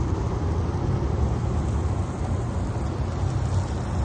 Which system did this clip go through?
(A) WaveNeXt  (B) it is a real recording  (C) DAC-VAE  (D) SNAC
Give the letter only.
B